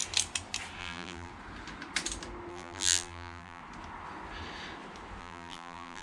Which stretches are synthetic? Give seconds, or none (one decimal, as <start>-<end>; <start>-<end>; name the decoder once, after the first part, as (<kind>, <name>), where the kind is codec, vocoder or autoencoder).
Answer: 0.8-1.3 (vocoder, BigVGAN v2); 2.5-3.6; 5.2-6.0